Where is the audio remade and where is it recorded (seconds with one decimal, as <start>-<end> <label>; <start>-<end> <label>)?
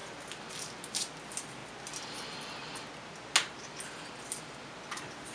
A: 0.0-5.3 recorded